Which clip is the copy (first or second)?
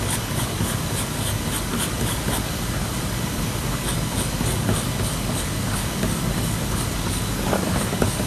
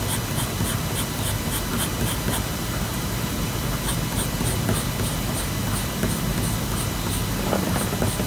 first